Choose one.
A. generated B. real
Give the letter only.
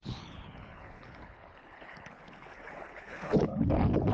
A